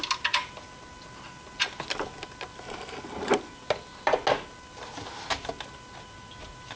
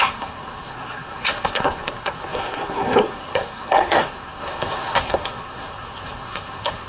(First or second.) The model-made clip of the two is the second